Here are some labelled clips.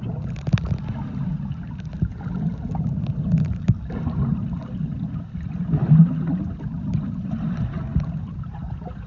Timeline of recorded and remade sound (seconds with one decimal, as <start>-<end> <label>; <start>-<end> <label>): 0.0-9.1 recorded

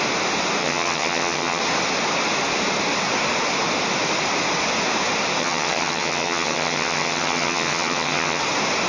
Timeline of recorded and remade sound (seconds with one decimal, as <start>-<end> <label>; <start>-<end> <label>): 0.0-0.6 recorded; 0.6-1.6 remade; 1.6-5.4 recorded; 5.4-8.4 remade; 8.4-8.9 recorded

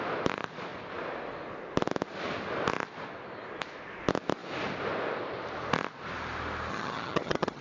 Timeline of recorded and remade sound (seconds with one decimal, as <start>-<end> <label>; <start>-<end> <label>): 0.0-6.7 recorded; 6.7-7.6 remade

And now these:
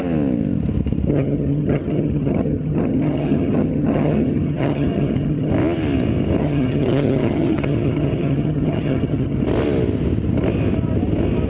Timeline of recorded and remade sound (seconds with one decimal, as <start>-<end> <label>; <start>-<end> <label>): 0.0-1.1 recorded; 1.1-5.5 remade; 5.5-6.4 recorded; 6.4-9.4 remade; 9.4-11.5 recorded

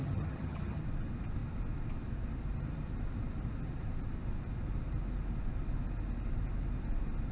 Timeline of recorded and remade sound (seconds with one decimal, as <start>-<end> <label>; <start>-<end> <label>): 0.0-0.8 remade; 0.8-7.3 recorded

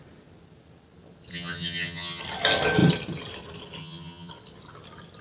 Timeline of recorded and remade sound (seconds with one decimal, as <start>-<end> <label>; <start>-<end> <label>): 0.0-1.3 recorded; 1.3-2.2 remade; 2.2-3.8 recorded; 3.8-4.3 remade; 4.3-5.2 recorded

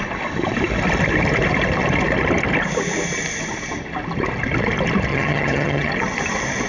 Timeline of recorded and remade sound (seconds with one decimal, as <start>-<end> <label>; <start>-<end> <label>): 0.0-5.1 recorded; 5.1-5.9 remade; 5.9-6.7 recorded

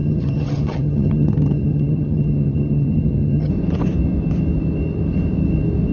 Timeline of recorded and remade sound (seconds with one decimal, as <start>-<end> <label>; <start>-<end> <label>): 0.0-3.5 remade; 3.5-5.9 recorded